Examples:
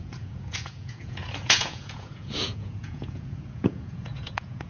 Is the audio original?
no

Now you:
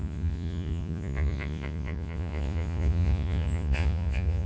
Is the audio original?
no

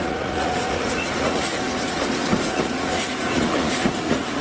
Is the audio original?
no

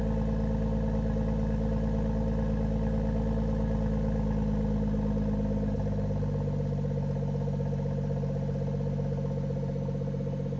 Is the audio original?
yes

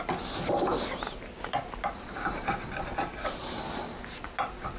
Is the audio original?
yes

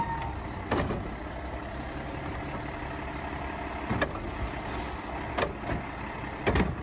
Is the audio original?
yes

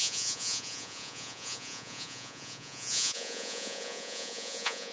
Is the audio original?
no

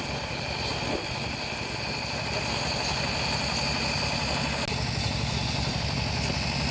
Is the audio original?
yes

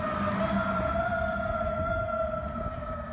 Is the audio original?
yes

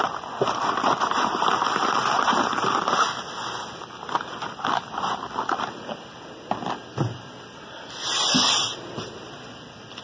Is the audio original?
yes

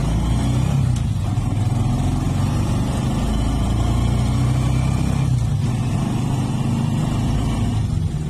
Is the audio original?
yes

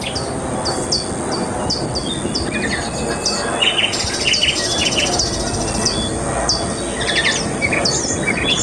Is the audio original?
yes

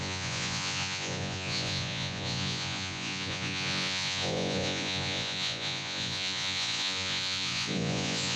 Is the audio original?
no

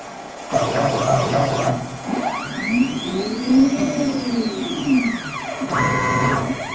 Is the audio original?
no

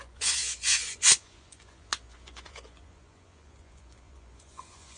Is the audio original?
no